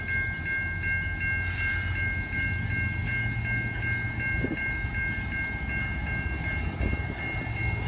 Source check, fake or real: real